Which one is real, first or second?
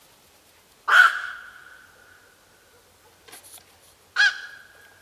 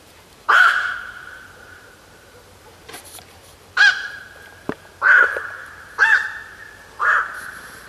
first